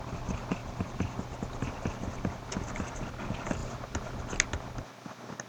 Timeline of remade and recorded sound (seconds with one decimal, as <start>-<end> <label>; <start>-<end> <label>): 0.0-5.5 recorded